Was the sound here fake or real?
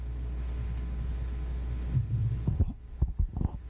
real